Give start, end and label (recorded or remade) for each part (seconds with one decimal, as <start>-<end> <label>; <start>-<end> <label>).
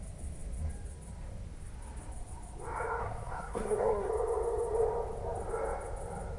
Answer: 0.0-3.0 recorded; 3.0-4.1 remade; 4.1-6.4 recorded